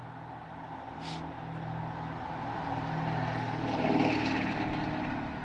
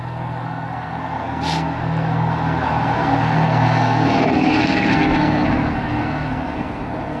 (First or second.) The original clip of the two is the first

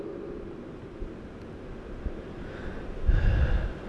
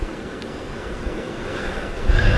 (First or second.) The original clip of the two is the first